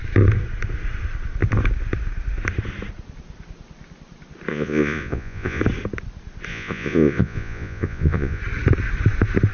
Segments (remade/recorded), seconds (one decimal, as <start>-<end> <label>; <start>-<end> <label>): 0.0-4.5 recorded; 4.5-5.6 remade; 5.6-6.5 recorded; 6.5-8.4 remade; 8.4-9.5 recorded